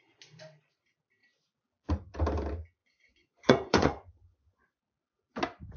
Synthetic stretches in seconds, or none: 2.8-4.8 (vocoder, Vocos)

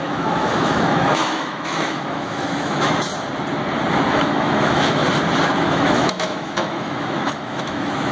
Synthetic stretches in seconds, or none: 0.0-3.1 (autoencoder, DAC-VAE); 4.1-5.0; 5.6-8.1

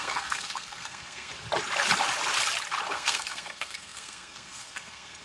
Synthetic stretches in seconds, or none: 0.0-1.3 (codec, SNAC); 2.9-5.2